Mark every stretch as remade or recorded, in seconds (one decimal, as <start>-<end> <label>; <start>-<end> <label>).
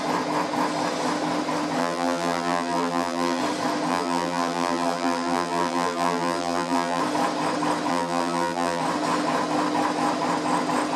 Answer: 0.0-1.8 recorded; 1.8-3.4 remade; 3.4-3.9 recorded; 3.9-7.0 remade; 7.0-7.9 recorded; 7.9-8.8 remade; 8.8-11.0 recorded